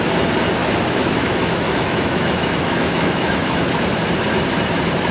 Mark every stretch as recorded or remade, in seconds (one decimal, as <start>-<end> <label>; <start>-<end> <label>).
0.0-0.6 recorded; 0.6-3.7 remade; 3.7-5.1 recorded